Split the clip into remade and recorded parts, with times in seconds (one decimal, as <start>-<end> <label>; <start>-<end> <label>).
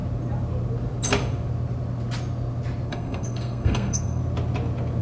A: 0.0-2.9 recorded; 2.9-4.2 remade; 4.2-5.0 recorded